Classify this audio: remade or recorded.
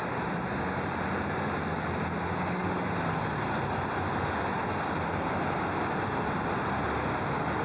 recorded